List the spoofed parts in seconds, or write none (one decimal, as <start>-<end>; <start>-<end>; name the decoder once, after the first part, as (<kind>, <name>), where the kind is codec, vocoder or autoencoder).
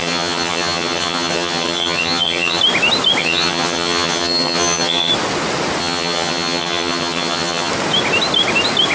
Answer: 0.0-2.6 (vocoder, HiFi-GAN); 3.2-5.1; 5.8-7.7